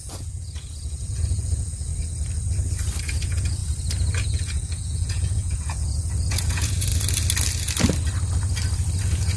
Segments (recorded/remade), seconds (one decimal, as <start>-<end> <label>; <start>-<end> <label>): 0.0-1.9 remade; 1.9-3.0 recorded; 3.0-3.6 remade; 3.6-4.2 recorded; 4.2-6.9 remade; 6.9-9.0 recorded; 9.0-9.4 remade